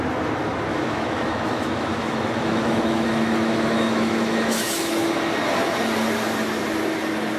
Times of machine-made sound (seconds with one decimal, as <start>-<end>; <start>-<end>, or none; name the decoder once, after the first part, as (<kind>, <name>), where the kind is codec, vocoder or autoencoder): 0.7-5.1 (autoencoder, DAC-VAE)